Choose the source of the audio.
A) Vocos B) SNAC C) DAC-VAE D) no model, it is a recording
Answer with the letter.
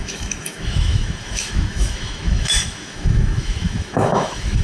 C